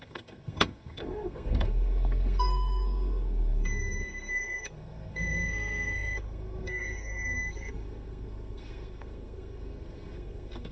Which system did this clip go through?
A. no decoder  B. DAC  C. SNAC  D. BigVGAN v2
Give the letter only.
C